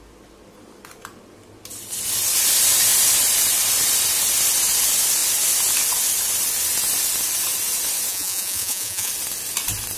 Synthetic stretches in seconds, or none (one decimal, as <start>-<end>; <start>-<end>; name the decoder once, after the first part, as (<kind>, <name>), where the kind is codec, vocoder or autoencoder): 8.1-9.1 (vocoder, Vocos)